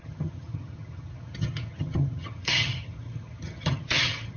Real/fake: fake